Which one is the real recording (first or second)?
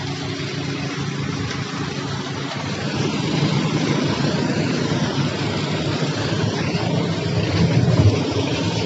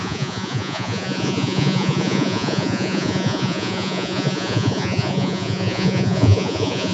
first